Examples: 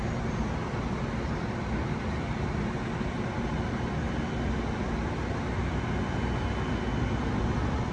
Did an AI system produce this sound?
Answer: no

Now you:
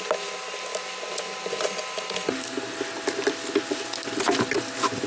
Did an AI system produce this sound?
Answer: no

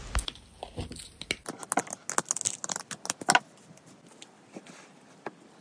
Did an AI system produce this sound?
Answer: no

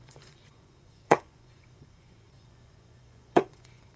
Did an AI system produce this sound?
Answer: yes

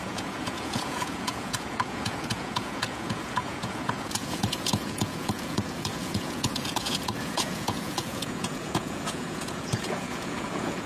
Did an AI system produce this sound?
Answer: yes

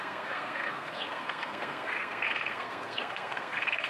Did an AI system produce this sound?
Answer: yes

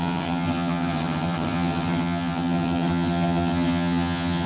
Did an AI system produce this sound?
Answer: yes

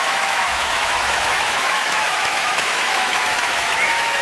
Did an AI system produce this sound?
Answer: yes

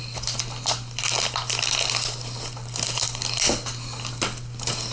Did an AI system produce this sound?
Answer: no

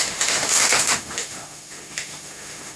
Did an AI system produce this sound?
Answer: yes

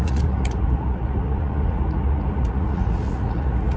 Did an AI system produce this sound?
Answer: yes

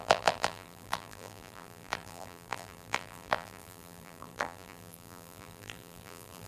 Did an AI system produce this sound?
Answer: yes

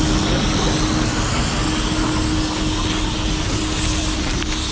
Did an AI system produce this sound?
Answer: no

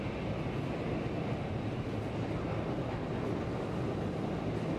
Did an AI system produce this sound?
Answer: no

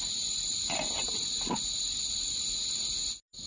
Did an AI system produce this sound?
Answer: no